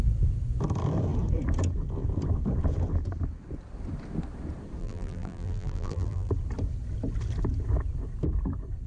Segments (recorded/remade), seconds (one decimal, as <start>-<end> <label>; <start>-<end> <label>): 0.0-4.8 recorded; 4.8-6.3 remade; 6.3-8.9 recorded